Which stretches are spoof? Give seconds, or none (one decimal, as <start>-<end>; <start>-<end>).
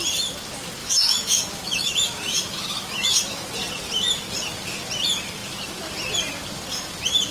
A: 0.8-3.5